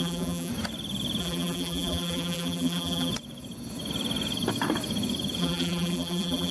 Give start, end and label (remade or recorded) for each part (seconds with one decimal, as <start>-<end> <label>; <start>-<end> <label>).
0.0-0.5 remade; 0.5-1.2 recorded; 1.2-3.1 remade; 3.1-5.4 recorded; 5.4-6.5 remade

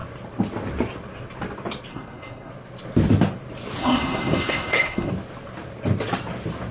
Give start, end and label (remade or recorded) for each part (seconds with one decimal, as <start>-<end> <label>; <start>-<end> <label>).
0.0-1.9 recorded; 1.9-2.5 remade; 2.5-3.8 recorded; 3.8-5.1 remade; 5.1-6.7 recorded